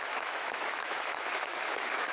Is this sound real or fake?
fake